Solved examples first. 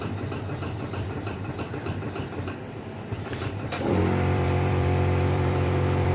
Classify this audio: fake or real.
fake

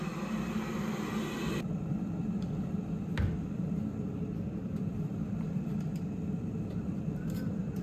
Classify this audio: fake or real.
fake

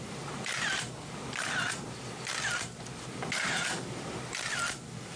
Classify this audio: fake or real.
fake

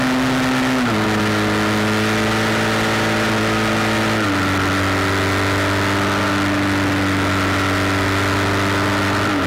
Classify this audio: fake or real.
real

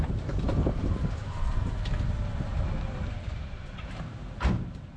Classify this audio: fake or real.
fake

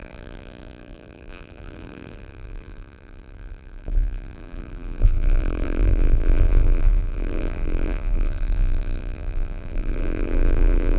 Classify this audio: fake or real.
fake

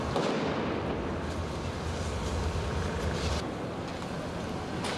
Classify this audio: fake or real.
real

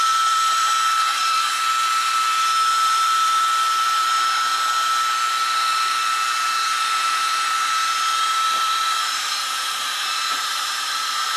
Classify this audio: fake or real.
fake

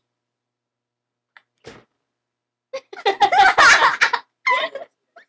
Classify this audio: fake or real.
real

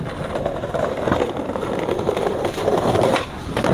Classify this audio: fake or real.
fake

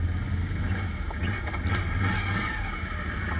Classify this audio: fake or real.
real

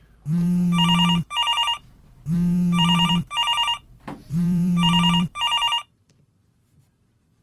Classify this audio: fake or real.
fake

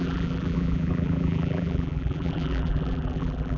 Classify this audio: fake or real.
fake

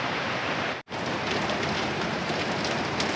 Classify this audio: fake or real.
fake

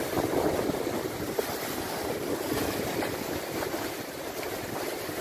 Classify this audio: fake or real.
real